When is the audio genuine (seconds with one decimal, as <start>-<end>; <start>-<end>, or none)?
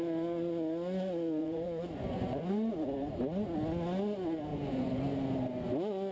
0.0-1.4; 2.4-4.5; 5.0-6.1